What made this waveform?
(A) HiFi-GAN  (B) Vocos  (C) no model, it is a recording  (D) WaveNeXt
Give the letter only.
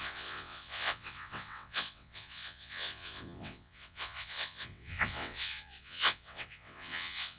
D